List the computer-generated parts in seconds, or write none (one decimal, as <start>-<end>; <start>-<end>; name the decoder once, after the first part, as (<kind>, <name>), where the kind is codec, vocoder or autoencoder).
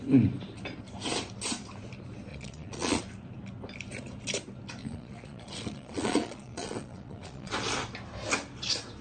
2.3-3.0 (vocoder, Vocos); 4.8-7.5